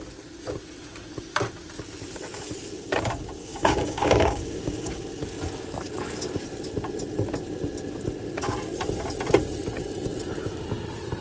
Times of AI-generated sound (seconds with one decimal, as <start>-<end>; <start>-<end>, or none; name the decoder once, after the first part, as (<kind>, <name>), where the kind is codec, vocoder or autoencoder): 3.4-4.9 (codec, DAC)

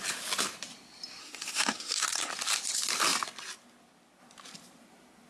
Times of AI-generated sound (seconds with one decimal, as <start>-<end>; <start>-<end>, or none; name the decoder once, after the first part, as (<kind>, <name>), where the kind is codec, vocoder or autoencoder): 1.2-2.3 (codec, SNAC)

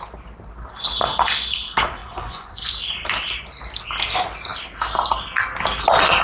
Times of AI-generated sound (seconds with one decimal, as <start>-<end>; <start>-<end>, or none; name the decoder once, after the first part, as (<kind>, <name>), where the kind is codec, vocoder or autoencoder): 2.0-2.7 (vocoder, Vocos)

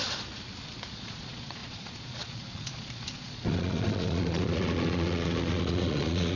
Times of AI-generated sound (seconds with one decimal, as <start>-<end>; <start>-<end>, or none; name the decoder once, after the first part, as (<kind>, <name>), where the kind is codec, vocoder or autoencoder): 0.9-6.4 (vocoder, Vocos)

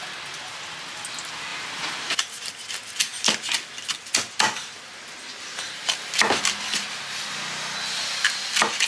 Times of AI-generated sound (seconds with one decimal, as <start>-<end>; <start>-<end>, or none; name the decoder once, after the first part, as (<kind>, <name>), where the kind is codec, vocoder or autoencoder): none

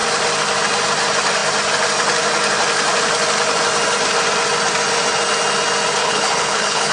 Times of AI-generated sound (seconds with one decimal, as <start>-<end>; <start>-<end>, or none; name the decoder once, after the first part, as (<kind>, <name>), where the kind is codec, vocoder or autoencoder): 6.0-6.9 (codec, HILCodec)

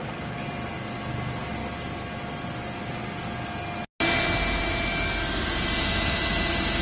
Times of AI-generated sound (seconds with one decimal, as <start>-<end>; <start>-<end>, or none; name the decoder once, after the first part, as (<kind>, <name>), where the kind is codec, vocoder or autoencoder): none